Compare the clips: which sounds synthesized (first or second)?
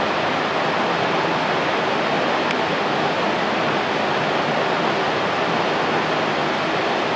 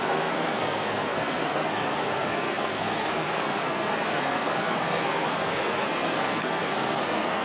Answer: second